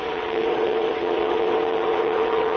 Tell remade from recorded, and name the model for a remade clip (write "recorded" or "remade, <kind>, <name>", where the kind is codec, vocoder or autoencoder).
remade, vocoder, WaveNeXt